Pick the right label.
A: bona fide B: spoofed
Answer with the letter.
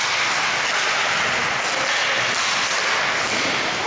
A